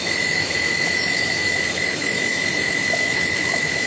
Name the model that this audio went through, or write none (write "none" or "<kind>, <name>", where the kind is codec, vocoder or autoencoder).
autoencoder, DAC-VAE